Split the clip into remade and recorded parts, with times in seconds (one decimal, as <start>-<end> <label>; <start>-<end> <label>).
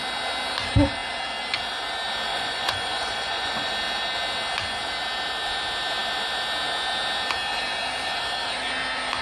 0.0-2.3 recorded; 2.3-3.7 remade; 3.7-9.2 recorded